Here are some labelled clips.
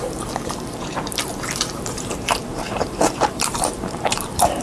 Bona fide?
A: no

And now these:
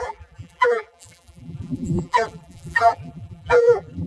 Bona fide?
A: no